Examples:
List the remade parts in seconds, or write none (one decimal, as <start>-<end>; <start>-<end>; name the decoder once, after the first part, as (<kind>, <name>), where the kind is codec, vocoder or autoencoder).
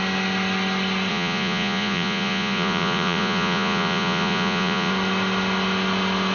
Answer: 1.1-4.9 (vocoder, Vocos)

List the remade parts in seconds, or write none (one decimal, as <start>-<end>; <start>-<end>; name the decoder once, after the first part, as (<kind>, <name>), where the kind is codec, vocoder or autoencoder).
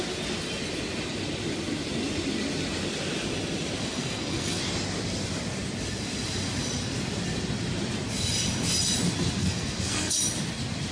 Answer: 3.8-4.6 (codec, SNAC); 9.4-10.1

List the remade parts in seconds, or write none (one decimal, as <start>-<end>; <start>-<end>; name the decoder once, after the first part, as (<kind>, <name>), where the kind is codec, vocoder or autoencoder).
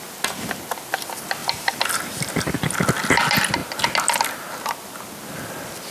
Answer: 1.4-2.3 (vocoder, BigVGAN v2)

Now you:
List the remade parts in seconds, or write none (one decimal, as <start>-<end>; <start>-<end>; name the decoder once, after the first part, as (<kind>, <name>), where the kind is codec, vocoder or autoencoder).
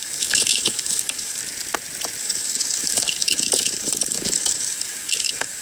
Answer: 0.0-1.4 (codec, DAC); 2.2-5.6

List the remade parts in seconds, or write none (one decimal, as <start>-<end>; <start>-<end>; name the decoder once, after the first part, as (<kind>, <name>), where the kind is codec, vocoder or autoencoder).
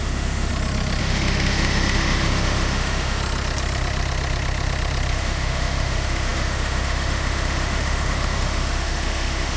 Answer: 0.0-0.5 (autoencoder, DAC-VAE); 1.0-3.2; 5.1-9.6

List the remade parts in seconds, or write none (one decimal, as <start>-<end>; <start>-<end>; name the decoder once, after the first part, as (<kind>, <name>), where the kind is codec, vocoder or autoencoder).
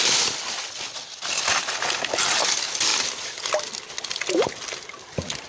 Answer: none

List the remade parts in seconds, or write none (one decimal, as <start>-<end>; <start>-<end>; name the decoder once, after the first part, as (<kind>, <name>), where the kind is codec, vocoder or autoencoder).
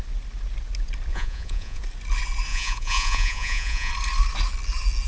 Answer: 1.1-1.8 (vocoder, Vocos); 2.5-3.9